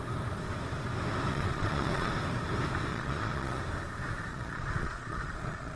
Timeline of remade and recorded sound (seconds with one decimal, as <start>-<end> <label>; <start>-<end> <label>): 0.0-1.3 recorded; 1.3-2.1 remade; 2.1-2.9 recorded; 2.9-3.6 remade; 3.6-4.3 recorded; 4.3-5.8 remade